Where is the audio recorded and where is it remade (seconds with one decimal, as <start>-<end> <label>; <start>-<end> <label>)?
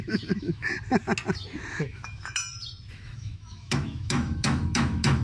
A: 0.0-0.7 remade; 0.7-1.7 recorded; 1.7-2.4 remade; 2.4-2.9 recorded; 2.9-5.2 remade